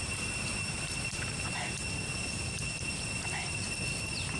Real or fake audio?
real